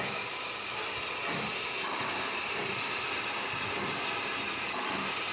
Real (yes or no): yes